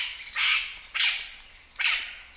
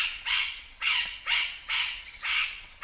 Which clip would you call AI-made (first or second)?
second